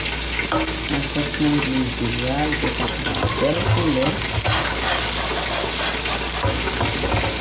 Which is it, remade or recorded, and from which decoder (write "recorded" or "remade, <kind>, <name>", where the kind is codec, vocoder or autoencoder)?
recorded